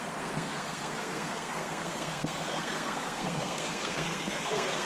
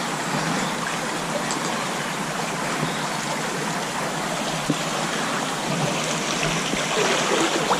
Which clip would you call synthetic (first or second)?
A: first